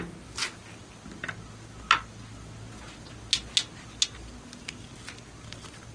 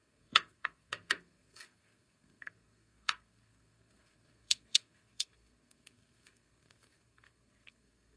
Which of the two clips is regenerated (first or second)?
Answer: second